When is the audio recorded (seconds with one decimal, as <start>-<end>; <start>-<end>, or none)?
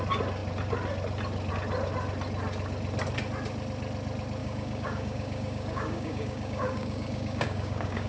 0.0-4.4